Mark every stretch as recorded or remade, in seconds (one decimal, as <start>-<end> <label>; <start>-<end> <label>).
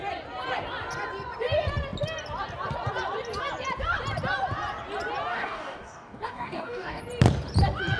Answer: 0.0-5.3 recorded; 5.3-7.0 remade; 7.0-8.0 recorded